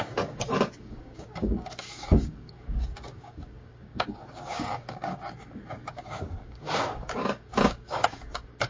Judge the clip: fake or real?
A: fake